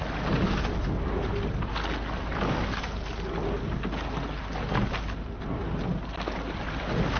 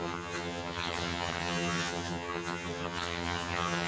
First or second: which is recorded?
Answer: first